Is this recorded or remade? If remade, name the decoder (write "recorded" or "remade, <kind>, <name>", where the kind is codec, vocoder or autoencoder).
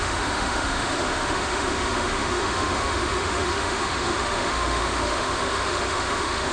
remade, autoencoder, DAC-VAE